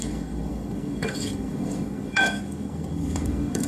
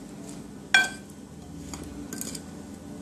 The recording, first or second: second